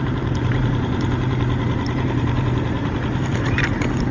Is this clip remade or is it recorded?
remade